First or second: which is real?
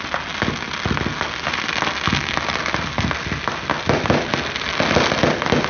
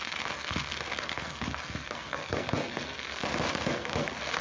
first